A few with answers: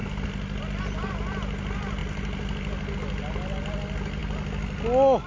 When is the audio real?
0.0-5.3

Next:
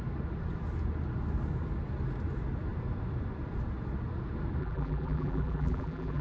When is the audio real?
0.0-4.6

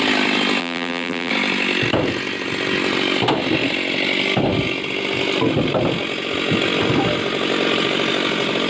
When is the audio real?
0.0-0.6; 1.3-8.7

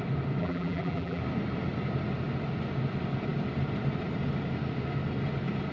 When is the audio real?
0.0-0.4; 1.2-5.7